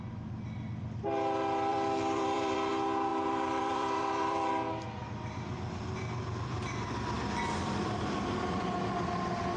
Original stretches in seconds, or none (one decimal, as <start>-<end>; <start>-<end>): 0.0-1.7; 2.7-3.1; 4.5-5.0; 8.9-9.6